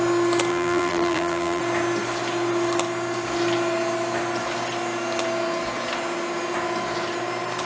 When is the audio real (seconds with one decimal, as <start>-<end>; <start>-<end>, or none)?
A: 0.0-0.5; 1.6-7.7